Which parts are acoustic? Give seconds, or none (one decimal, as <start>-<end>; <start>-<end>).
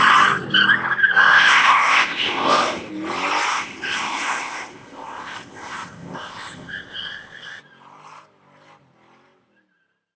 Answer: 0.0-1.2; 2.9-3.5; 7.6-10.2